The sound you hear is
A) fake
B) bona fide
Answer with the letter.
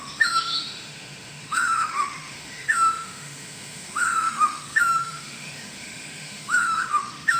A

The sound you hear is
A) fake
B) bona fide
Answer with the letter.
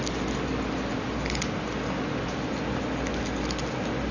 B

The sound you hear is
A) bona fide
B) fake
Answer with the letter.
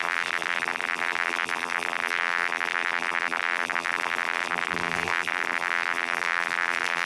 B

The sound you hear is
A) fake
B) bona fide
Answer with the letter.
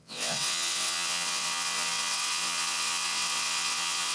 A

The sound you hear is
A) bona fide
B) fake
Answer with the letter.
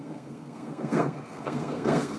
B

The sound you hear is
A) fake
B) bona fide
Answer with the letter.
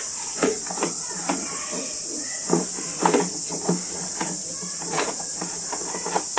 A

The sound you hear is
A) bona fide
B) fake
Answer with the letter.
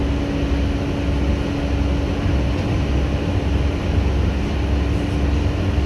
A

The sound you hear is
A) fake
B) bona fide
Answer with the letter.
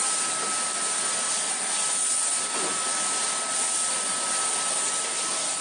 B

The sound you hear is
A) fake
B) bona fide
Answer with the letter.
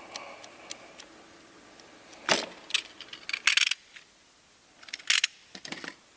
B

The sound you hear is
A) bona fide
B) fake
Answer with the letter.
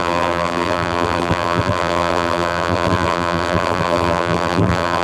B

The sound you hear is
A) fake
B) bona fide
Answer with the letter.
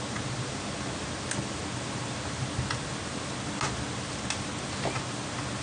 B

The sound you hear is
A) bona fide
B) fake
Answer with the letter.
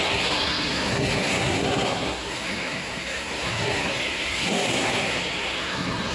B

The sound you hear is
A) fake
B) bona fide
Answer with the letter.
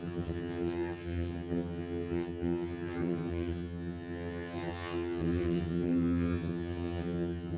A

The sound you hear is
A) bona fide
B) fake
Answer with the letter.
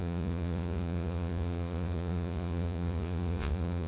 B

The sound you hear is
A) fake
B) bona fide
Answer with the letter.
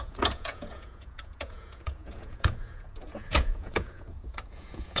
A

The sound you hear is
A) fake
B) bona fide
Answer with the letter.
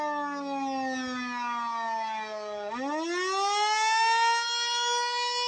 B